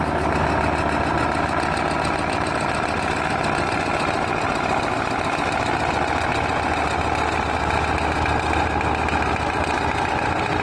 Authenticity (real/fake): real